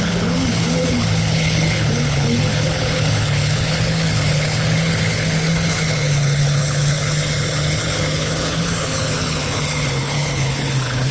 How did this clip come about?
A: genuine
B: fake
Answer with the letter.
B